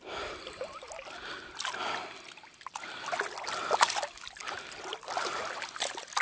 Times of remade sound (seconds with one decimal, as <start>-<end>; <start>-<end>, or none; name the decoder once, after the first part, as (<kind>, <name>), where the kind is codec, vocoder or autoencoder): none